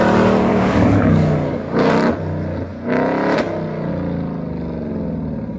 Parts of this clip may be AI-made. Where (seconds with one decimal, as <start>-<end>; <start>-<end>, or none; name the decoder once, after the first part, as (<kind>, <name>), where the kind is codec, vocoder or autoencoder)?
0.5-1.9 (codec, DAC)